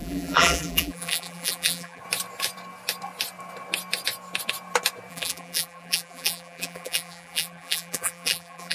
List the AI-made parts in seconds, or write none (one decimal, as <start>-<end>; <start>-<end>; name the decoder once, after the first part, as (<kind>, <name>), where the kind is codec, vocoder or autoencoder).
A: 0.0-2.0 (vocoder, BigVGAN v2); 5.1-8.7